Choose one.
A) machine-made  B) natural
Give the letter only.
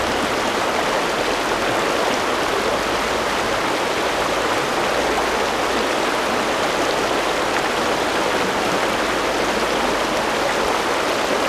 B